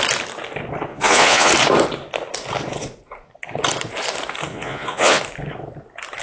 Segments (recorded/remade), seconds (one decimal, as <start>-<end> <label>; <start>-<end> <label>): 0.0-0.9 recorded; 0.9-1.5 remade; 1.5-4.5 recorded; 4.5-5.2 remade; 5.2-6.2 recorded